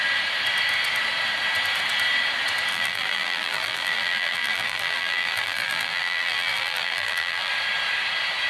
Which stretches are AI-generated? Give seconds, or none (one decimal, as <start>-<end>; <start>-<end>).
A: 2.7-7.5